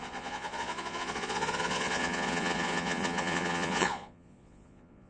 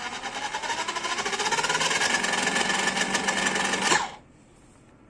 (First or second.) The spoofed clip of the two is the first